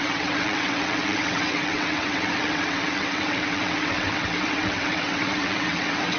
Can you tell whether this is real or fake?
fake